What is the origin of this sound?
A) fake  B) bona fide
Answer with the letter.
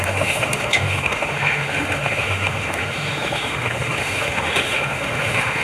A